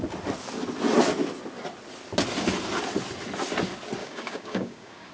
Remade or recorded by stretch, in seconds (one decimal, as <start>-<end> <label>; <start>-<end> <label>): 0.0-4.0 recorded; 4.0-5.1 remade